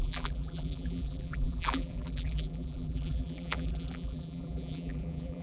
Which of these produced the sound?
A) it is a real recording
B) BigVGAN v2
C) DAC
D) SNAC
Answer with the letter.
B